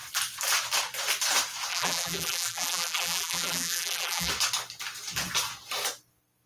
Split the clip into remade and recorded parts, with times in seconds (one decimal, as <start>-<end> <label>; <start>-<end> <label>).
0.0-1.7 recorded; 1.7-4.3 remade; 4.3-6.5 recorded